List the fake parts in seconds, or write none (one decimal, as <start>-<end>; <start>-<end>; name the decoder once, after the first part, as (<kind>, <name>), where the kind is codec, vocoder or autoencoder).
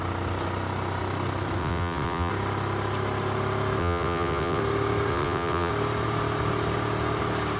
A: 1.6-2.3 (vocoder, WaveNeXt); 3.8-4.6; 5.1-5.7